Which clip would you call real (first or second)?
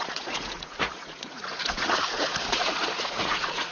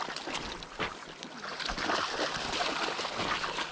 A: second